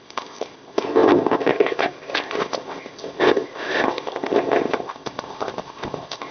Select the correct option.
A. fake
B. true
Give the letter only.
A